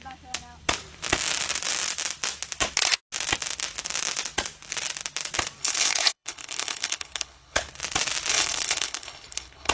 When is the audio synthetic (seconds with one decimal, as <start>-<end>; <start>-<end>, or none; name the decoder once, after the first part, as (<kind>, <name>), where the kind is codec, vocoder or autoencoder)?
5.6-7.6 (codec, HILCodec); 8.3-9.7